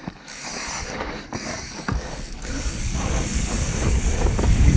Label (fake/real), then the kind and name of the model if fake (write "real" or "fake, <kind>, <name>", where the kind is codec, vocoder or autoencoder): fake, codec, DAC